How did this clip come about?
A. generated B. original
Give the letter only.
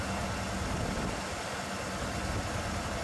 B